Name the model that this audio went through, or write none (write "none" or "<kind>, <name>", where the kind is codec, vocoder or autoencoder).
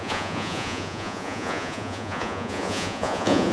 vocoder, Vocos